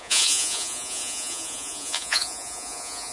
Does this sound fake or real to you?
fake